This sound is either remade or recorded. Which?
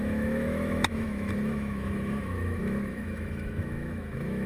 remade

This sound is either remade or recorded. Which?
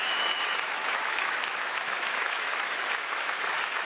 remade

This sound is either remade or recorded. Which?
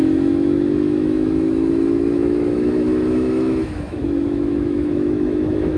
remade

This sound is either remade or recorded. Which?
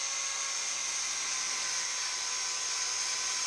recorded